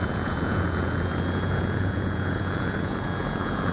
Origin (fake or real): fake